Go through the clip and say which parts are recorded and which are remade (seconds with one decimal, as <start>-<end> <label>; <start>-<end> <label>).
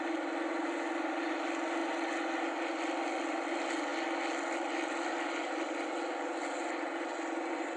0.0-7.8 recorded